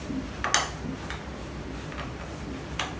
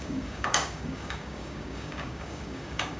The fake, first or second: second